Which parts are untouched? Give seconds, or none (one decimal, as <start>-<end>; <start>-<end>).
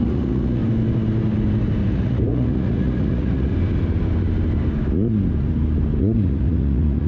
0.6-1.9; 3.5-6.0